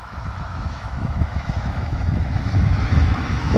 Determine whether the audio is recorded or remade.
remade